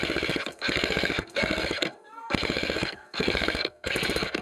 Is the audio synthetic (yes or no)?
yes